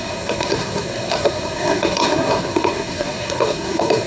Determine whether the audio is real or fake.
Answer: fake